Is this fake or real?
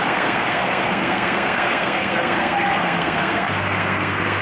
fake